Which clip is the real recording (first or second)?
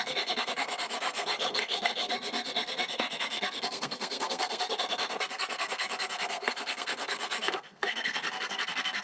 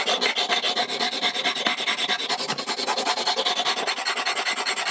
second